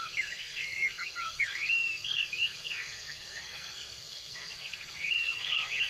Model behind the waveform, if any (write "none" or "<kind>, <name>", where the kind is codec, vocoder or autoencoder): codec, SNAC